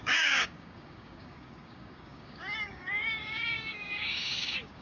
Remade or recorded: remade